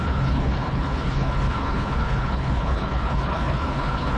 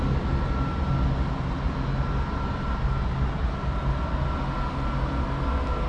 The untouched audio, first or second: second